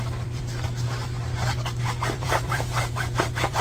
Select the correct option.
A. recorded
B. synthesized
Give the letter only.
B